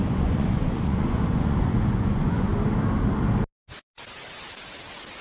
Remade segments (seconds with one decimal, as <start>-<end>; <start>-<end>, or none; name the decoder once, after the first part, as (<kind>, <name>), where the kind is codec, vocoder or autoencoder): 0.0-2.5 (vocoder, Vocos)